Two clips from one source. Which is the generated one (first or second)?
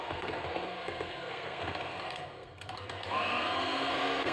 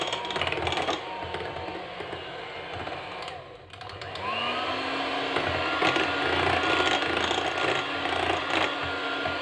first